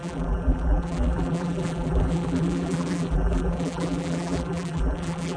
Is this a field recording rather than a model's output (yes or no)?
no